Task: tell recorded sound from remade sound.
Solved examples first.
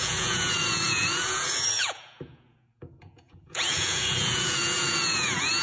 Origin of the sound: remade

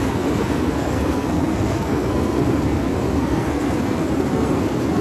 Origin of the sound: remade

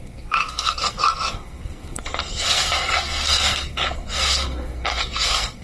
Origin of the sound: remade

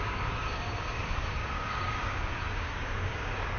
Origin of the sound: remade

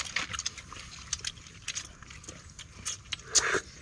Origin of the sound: recorded